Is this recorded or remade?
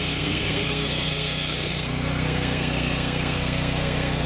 remade